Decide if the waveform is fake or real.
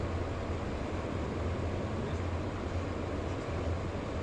real